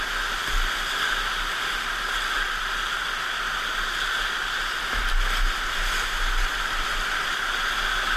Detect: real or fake real